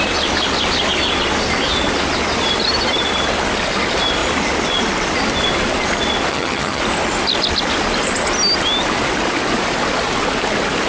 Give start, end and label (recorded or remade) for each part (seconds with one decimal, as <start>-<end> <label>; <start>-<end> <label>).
0.0-6.3 recorded; 6.3-6.8 remade; 6.8-10.9 recorded